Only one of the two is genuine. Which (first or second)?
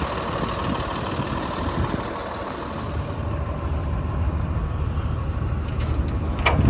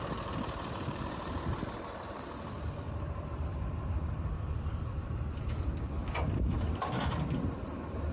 first